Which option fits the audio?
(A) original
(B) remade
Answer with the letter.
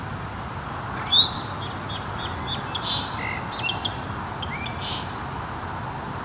A